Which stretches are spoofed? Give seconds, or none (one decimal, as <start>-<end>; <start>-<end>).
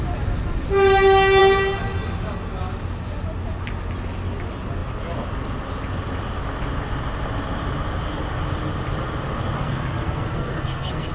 9.6-11.1